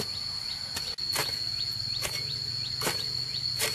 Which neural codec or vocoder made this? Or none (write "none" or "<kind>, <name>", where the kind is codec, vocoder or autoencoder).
none